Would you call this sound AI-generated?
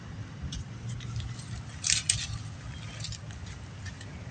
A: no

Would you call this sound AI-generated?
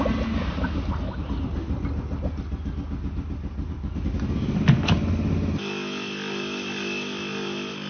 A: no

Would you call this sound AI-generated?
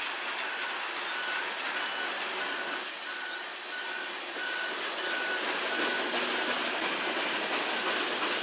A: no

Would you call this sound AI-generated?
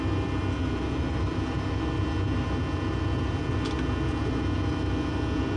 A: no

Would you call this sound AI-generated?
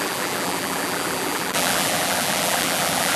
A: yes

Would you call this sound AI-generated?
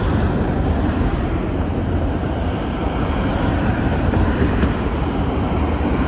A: yes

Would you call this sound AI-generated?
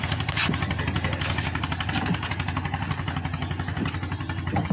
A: no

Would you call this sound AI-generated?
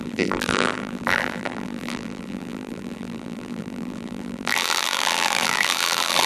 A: yes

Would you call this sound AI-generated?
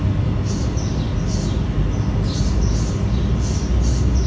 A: no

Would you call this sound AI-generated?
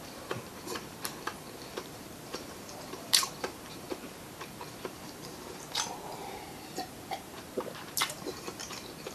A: yes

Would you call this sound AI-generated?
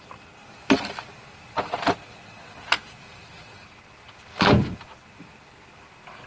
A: yes